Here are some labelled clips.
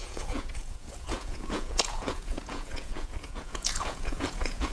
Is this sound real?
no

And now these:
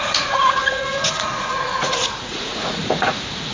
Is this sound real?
no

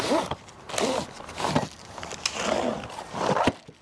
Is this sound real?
yes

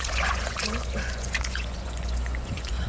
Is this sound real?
no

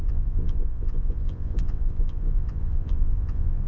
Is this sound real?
no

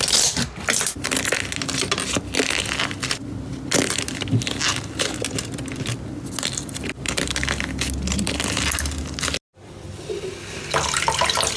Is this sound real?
yes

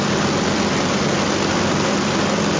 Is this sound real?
yes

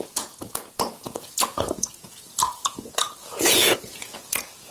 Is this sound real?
no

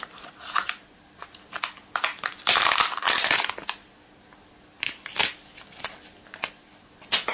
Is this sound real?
yes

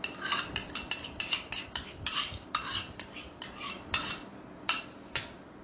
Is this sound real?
yes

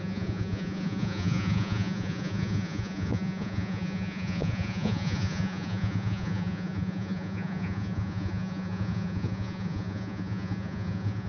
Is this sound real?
no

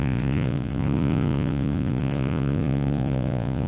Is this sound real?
no